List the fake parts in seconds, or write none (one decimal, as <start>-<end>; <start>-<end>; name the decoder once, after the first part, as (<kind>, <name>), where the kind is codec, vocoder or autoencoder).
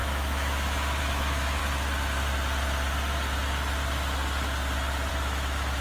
0.0-1.6 (autoencoder, DAC-VAE); 5.1-5.8